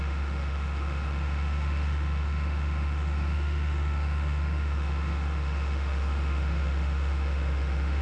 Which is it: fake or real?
fake